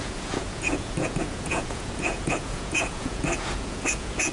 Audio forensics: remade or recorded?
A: remade